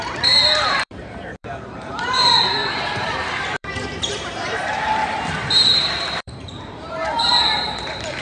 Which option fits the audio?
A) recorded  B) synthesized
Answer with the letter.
B